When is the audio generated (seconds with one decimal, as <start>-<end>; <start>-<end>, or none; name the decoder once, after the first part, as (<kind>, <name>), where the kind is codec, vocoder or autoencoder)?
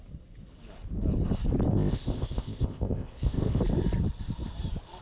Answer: 1.7-3.6 (codec, ZipCodec)